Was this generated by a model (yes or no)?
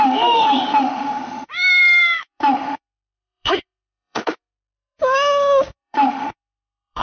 yes